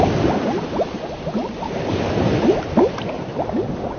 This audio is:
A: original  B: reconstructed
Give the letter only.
A